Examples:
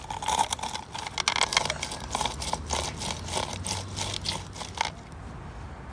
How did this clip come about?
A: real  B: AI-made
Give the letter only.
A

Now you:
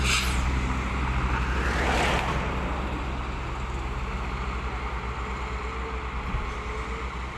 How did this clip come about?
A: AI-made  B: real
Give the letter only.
B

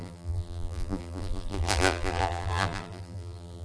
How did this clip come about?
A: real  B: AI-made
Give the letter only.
B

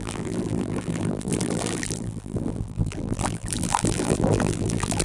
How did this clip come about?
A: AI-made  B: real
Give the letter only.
A